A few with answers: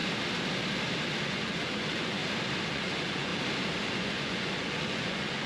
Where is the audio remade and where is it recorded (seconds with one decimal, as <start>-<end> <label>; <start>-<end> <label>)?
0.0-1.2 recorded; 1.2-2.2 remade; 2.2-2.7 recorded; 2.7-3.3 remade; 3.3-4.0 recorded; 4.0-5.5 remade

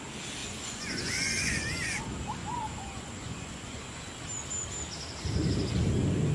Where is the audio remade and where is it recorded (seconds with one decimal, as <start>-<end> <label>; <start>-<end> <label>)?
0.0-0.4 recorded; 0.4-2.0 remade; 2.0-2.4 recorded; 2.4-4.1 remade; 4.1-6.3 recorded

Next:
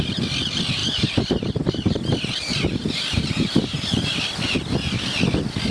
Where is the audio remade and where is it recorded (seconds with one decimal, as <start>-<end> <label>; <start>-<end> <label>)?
0.0-0.8 recorded; 0.8-4.2 remade; 4.2-5.7 recorded

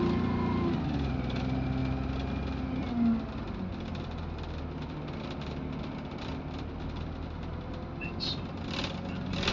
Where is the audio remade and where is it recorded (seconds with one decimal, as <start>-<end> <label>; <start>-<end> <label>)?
0.0-9.5 recorded

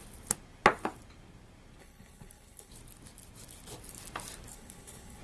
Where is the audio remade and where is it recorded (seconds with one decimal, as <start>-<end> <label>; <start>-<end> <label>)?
0.0-1.8 recorded; 1.8-2.7 remade; 2.7-4.5 recorded; 4.5-5.2 remade